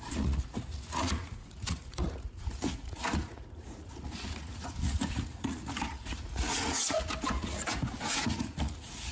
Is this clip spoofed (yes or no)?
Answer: yes